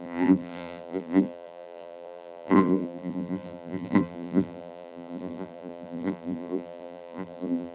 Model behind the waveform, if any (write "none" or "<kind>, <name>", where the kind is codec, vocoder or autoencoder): vocoder, BigVGAN v2